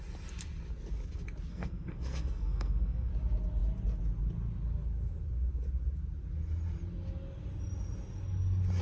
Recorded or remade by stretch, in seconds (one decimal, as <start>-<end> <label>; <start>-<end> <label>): 0.0-1.5 recorded; 1.5-3.1 remade; 3.1-8.8 recorded

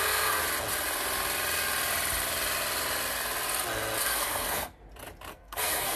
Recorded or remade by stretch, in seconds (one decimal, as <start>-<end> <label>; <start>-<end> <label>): 0.0-0.4 remade; 0.4-4.0 recorded; 4.0-4.8 remade; 4.8-5.3 recorded; 5.3-6.0 remade